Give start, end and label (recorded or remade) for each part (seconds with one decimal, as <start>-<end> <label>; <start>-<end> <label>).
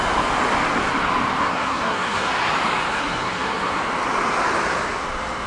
0.0-1.4 recorded; 1.4-2.3 remade; 2.3-2.9 recorded; 2.9-3.8 remade; 3.8-5.5 recorded